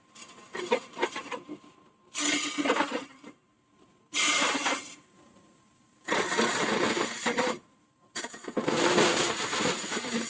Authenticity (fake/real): fake